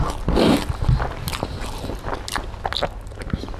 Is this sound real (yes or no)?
yes